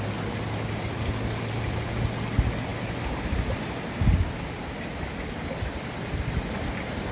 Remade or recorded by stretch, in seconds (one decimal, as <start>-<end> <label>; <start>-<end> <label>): 0.0-7.1 recorded